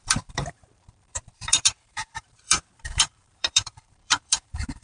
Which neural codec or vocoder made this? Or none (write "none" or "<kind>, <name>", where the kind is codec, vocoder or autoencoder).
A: vocoder, BigVGAN v2